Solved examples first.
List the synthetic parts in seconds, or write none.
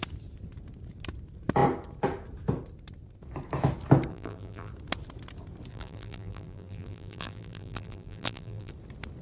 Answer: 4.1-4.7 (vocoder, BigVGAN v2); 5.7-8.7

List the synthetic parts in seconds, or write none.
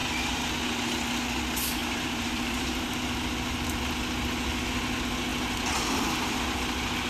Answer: 1.8-2.9 (vocoder, BigVGAN v2)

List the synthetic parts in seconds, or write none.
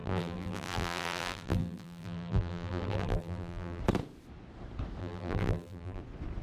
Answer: 0.0-3.8 (vocoder, BigVGAN v2); 5.0-6.0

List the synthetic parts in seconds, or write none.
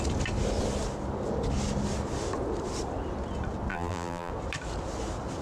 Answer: 3.7-4.3 (vocoder, BigVGAN v2)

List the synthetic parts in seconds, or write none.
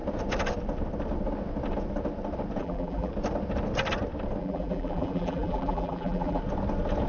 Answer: 2.6-3.1 (vocoder, BigVGAN v2); 4.4-6.4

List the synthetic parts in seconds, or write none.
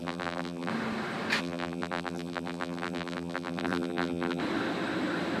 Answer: 0.0-0.7 (vocoder, BigVGAN v2); 1.4-4.4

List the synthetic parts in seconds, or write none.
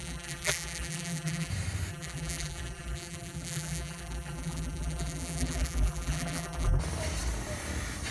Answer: 0.0-1.5 (vocoder, BigVGAN v2); 1.9-6.8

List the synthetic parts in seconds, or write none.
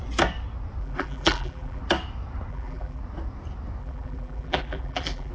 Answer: 0.8-1.8 (vocoder, BigVGAN v2); 2.5-3.0; 3.8-5.3